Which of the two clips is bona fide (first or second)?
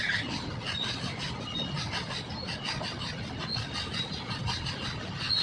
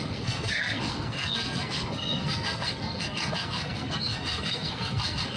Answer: first